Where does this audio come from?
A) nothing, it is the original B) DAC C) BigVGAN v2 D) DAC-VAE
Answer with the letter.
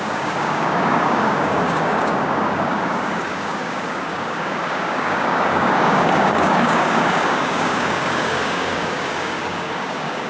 B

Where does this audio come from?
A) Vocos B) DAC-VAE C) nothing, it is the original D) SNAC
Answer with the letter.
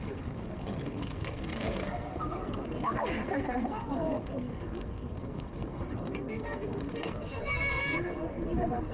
D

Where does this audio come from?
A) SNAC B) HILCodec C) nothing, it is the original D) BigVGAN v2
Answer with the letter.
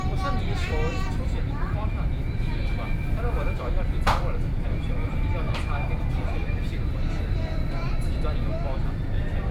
D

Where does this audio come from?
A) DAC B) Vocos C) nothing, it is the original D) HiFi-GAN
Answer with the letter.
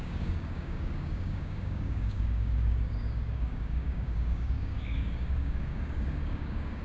A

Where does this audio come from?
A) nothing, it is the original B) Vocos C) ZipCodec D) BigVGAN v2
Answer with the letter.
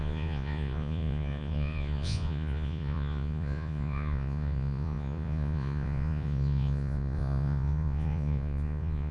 B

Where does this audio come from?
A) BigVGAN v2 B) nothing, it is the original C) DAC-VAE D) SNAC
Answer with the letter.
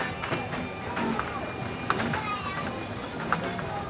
B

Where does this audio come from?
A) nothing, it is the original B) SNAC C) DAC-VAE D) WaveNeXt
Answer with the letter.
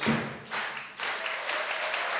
A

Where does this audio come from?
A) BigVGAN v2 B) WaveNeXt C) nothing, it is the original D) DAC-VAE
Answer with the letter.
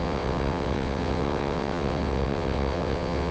B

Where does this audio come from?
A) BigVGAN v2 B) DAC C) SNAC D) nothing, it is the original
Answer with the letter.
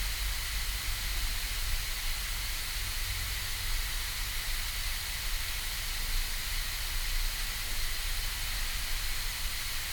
D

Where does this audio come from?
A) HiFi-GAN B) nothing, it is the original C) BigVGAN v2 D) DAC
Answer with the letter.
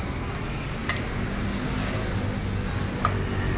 B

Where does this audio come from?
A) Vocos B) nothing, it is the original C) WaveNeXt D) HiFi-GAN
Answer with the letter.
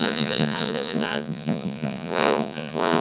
A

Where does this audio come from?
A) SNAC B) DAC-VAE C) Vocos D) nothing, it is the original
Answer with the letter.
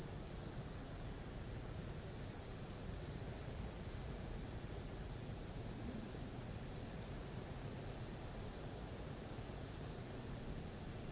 C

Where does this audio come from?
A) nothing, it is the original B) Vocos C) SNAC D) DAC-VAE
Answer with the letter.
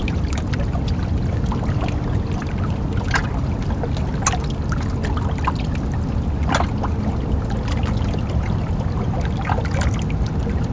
A